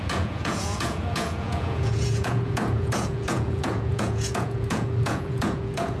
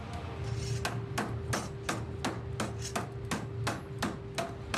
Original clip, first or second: second